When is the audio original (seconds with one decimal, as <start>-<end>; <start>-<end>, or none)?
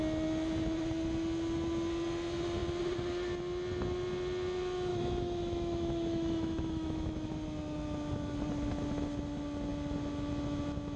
0.0-4.9; 7.3-11.0